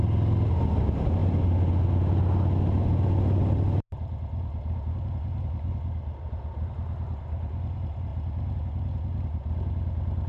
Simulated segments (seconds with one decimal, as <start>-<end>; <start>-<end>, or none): none